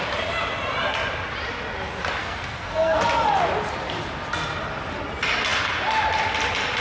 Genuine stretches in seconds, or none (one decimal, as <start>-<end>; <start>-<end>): 0.0-2.2; 3.0-6.8